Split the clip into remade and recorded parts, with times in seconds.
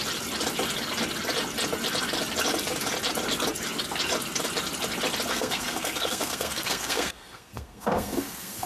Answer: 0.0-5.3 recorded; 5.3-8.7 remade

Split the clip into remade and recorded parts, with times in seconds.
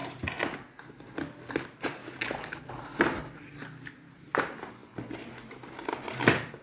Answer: 0.0-6.6 recorded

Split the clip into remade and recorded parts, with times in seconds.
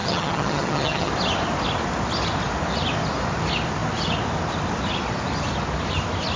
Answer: 0.0-1.1 remade; 1.1-6.4 recorded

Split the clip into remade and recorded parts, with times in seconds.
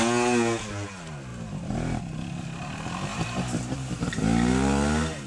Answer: 0.0-1.3 recorded; 1.3-2.0 remade; 2.0-3.1 recorded; 3.1-4.0 remade; 4.0-5.3 recorded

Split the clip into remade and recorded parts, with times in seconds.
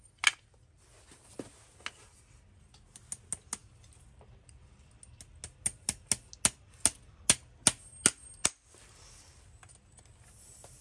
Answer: 0.0-10.8 recorded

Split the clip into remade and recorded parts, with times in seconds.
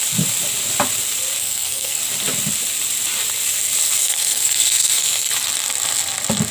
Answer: 0.0-1.4 recorded; 1.4-2.0 remade; 2.0-4.0 recorded; 4.0-5.3 remade; 5.3-6.5 recorded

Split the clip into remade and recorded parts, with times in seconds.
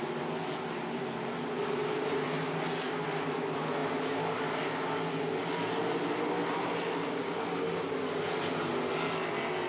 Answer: 0.0-9.7 recorded